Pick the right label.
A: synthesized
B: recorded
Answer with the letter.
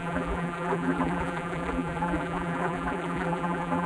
A